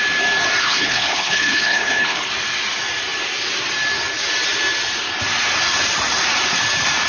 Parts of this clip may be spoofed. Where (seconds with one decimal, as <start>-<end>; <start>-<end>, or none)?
0.6-2.3